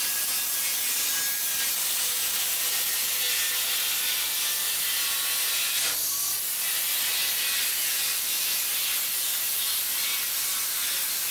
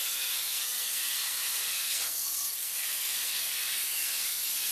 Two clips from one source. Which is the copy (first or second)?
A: second